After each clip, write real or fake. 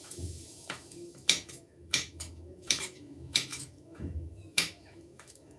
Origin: fake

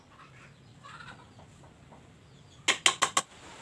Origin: real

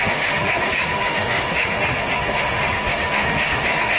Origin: fake